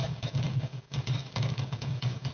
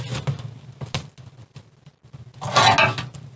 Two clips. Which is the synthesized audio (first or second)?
first